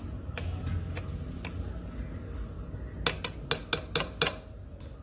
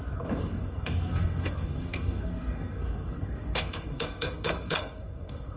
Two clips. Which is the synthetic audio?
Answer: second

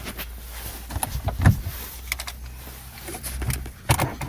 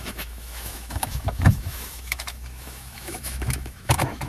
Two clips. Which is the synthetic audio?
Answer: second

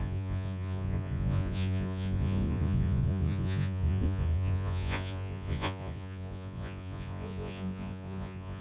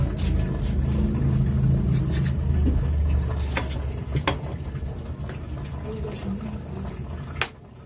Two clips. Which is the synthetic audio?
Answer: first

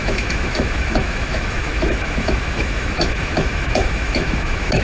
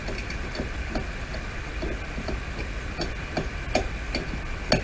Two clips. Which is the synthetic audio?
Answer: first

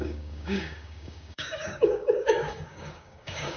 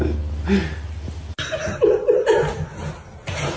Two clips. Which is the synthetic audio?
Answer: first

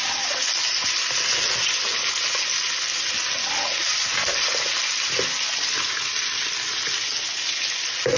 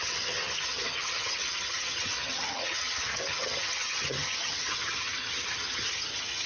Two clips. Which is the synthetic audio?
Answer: second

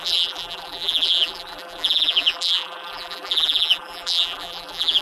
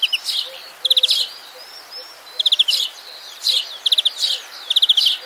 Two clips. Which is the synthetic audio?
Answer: first